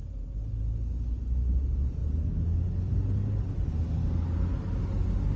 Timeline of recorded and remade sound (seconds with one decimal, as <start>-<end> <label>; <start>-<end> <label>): 0.0-5.4 recorded